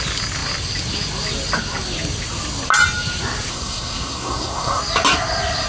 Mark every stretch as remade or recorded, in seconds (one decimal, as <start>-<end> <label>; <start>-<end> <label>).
0.0-3.5 recorded; 3.5-4.8 remade; 4.8-5.7 recorded